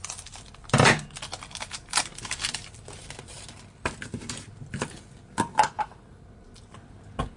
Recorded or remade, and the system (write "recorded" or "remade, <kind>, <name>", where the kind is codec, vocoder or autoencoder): recorded